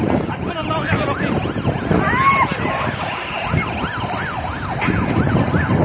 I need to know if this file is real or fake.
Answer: real